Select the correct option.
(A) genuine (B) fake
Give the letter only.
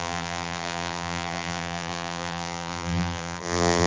B